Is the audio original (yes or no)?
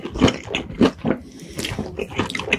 yes